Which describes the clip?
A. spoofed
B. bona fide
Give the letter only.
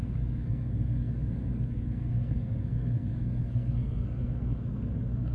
A